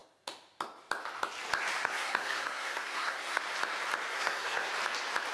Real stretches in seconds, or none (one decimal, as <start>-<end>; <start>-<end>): 0.0-1.8; 3.4-4.1; 4.7-5.3

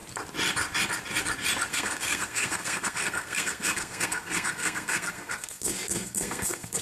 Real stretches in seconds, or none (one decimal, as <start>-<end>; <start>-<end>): 0.0-1.7

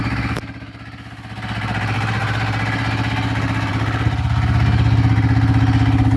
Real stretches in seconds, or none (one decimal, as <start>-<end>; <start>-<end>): 0.0-6.2

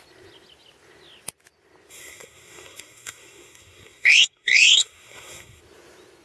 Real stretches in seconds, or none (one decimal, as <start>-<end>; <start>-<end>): 0.0-1.9; 5.6-6.2

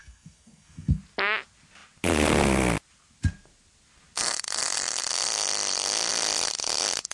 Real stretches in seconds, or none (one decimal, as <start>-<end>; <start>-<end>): 1.0-7.1

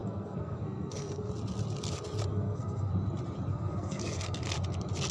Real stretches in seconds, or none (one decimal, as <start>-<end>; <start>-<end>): 1.3-2.3; 2.9-3.5; 4.4-5.1

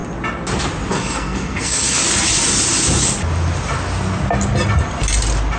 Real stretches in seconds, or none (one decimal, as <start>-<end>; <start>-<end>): 0.0-0.9; 2.0-5.6